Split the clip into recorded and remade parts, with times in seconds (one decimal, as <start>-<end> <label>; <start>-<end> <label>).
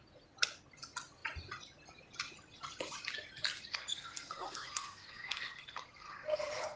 0.0-3.7 recorded; 3.7-6.8 remade